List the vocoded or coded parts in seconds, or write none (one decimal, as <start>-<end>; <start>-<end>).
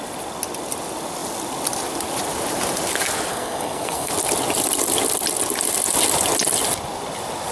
3.3-4.1